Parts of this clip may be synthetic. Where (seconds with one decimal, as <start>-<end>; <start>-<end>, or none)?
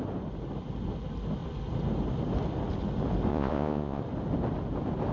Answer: 3.3-4.0